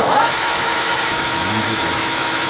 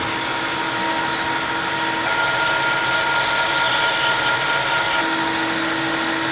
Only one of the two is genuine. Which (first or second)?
second